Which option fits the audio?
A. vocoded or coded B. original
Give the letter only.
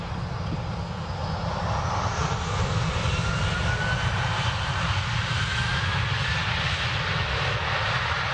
B